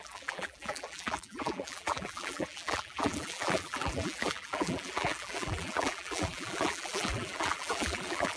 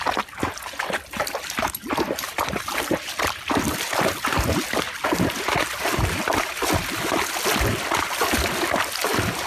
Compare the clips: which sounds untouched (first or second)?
second